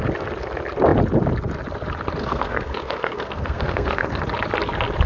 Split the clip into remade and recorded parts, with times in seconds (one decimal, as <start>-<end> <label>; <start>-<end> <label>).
0.0-2.2 recorded; 2.2-4.2 remade; 4.2-5.1 recorded